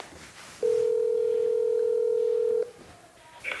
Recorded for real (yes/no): yes